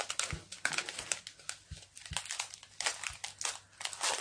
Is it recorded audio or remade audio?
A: recorded